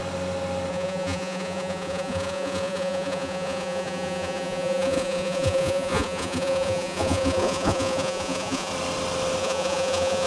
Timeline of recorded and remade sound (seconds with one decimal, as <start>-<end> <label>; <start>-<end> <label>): 0.0-0.7 recorded; 0.7-8.7 remade; 8.7-9.4 recorded; 9.4-10.3 remade